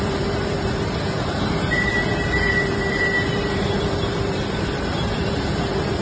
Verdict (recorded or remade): remade